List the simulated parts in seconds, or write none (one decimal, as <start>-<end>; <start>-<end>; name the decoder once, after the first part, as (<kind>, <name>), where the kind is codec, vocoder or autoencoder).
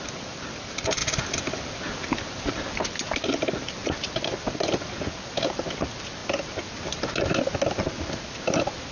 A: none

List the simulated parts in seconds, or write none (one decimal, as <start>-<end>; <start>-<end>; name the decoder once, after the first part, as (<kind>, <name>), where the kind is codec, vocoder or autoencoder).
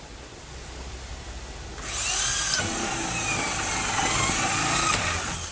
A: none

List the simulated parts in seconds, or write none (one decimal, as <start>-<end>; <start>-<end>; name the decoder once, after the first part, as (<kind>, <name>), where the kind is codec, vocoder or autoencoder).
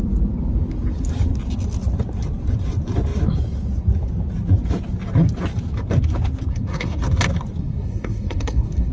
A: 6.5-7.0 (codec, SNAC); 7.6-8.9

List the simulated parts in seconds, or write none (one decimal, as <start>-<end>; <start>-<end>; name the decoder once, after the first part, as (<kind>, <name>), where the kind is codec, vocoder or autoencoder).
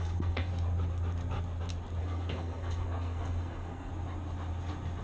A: 0.0-0.5 (codec, SNAC); 2.0-3.9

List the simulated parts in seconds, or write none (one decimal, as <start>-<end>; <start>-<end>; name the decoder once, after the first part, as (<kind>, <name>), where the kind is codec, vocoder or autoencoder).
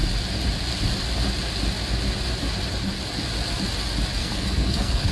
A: 4.2-5.1 (codec, SNAC)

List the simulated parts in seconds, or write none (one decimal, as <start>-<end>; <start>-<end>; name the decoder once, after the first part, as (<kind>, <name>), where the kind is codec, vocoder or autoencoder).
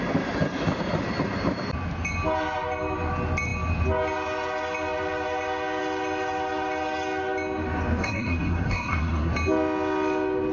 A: 8.0-9.3 (codec, SNAC)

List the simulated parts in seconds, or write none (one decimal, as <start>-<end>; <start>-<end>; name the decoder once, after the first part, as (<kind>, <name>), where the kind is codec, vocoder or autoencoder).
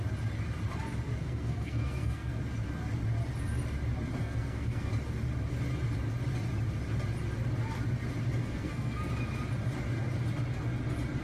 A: 1.2-2.4 (codec, SNAC); 4.2-4.9; 8.4-9.1